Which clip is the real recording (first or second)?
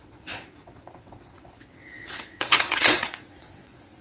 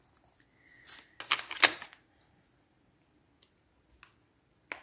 second